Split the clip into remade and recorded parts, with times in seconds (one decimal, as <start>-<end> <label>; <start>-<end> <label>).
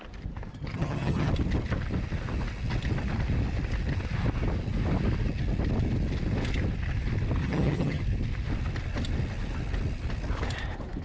0.0-0.5 recorded; 0.5-1.3 remade; 1.3-7.4 recorded; 7.4-8.0 remade; 8.0-11.0 recorded